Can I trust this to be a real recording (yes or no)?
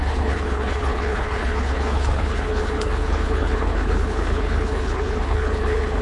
no